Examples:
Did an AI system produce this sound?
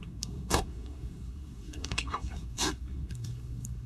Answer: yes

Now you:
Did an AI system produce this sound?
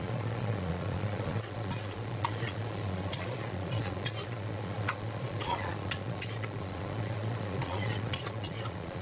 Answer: yes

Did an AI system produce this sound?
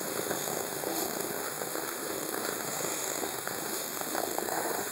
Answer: yes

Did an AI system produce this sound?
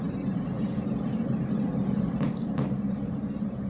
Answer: yes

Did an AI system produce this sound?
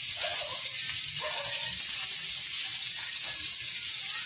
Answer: no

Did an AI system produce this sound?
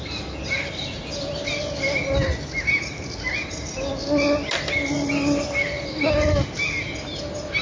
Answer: no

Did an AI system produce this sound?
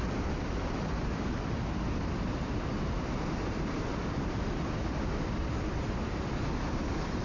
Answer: no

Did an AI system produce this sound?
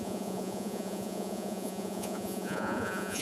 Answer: yes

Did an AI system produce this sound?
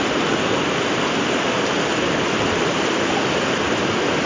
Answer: no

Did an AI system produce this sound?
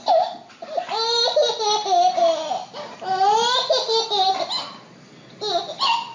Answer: no